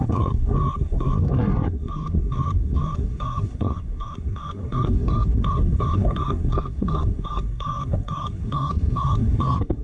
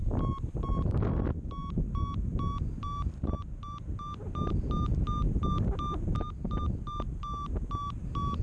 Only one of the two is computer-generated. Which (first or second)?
first